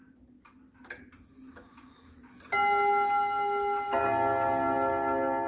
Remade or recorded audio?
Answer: recorded